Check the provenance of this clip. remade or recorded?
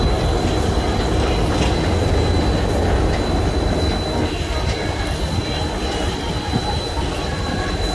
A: recorded